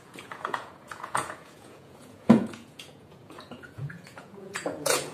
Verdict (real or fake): fake